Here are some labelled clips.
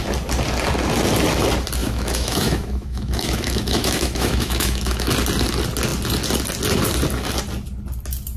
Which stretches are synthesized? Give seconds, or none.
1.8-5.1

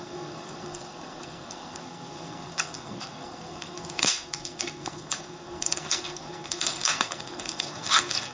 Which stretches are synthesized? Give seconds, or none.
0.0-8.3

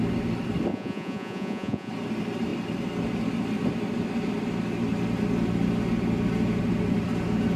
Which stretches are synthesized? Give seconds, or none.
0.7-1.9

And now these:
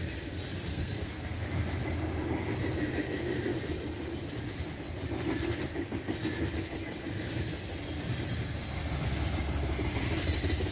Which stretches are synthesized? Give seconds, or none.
0.7-1.5

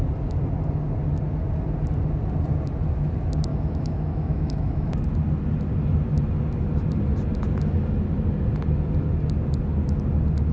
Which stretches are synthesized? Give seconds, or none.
3.5-4.9